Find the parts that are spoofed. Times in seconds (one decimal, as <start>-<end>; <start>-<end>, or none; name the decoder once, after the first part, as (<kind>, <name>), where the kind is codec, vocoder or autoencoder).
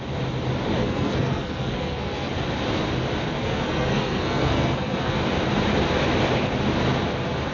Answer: 0.8-2.3 (codec, SNAC); 3.4-5.2